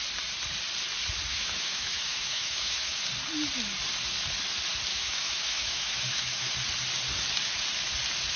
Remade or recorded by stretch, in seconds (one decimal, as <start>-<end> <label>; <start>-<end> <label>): 0.0-1.3 recorded; 1.3-3.0 remade; 3.0-4.9 recorded; 4.9-6.5 remade; 6.5-8.4 recorded